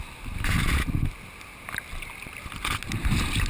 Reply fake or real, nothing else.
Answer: real